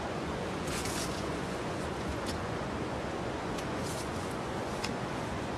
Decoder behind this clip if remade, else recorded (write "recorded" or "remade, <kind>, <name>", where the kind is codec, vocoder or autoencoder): remade, vocoder, Vocos